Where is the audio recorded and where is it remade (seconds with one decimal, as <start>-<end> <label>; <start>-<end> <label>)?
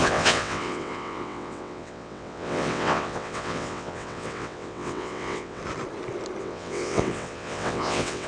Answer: 0.0-5.6 remade; 5.6-6.4 recorded; 6.4-8.3 remade